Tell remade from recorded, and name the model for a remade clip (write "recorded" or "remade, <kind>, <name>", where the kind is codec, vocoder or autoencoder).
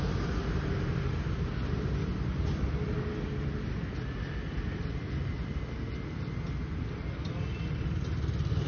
recorded